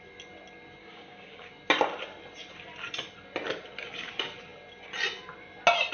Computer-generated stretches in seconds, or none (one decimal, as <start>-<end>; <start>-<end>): 0.8-1.5